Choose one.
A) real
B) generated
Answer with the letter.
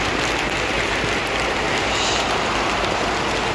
B